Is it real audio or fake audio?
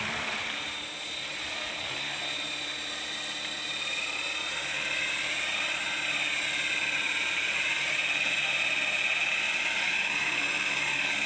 fake